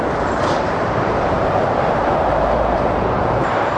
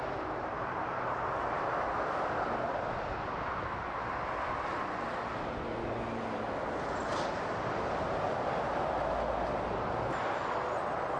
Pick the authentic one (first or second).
second